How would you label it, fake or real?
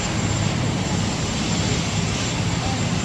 real